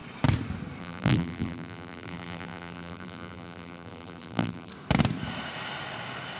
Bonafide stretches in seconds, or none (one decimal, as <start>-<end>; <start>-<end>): 0.0-0.8; 4.7-6.4

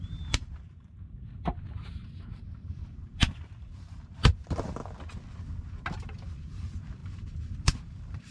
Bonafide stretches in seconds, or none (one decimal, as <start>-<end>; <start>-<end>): 4.8-5.9